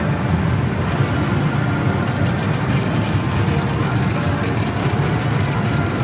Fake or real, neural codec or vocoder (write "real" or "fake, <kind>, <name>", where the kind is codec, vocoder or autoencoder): real